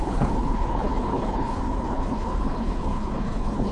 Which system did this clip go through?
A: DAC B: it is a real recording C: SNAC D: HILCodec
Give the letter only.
D